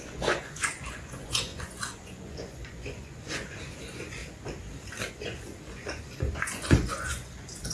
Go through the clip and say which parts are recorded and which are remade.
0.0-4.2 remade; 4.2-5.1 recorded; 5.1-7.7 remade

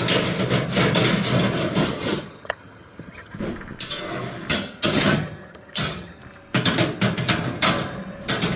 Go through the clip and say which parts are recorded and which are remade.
0.0-1.8 recorded; 1.8-3.4 remade; 3.4-4.5 recorded; 4.5-6.2 remade; 6.2-8.6 recorded

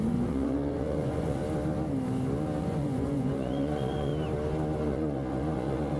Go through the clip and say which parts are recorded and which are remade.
0.0-1.4 remade; 1.4-2.6 recorded; 2.6-4.1 remade; 4.1-4.8 recorded; 4.8-6.0 remade

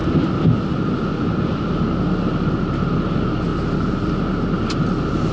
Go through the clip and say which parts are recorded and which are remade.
0.0-5.3 recorded